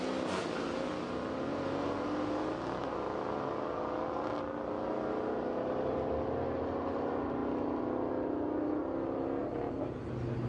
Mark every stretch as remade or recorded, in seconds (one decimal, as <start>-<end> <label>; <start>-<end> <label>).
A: 0.0-10.5 recorded